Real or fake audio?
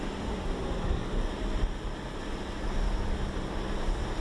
real